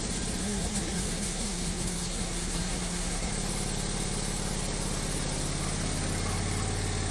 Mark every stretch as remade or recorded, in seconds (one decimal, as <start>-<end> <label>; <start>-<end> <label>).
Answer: 0.0-0.4 recorded; 0.4-3.3 remade; 3.3-7.1 recorded